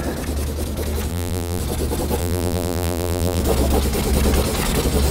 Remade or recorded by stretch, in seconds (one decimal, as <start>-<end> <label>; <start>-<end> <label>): 0.0-1.1 recorded; 1.1-1.6 remade; 1.6-2.2 recorded; 2.2-3.4 remade; 3.4-5.1 recorded